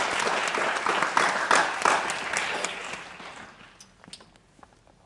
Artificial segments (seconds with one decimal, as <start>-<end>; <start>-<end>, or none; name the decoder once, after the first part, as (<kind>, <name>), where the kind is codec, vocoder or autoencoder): none